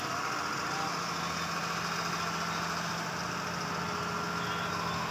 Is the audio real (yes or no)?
yes